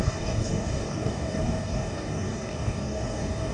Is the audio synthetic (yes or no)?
yes